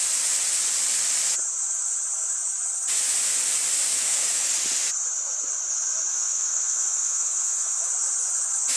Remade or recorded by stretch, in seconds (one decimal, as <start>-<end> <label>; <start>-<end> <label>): 0.0-3.9 recorded; 3.9-4.5 remade; 4.5-6.1 recorded; 6.1-7.9 remade; 7.9-8.8 recorded

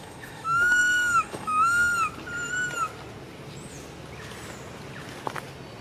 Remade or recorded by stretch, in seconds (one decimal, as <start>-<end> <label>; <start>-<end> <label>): 0.0-1.9 remade; 1.9-5.8 recorded